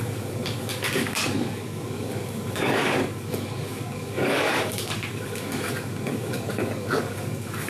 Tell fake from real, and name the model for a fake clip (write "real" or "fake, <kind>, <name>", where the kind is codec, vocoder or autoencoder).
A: fake, codec, DAC